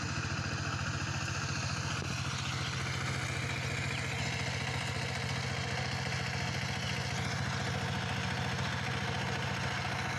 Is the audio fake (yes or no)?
no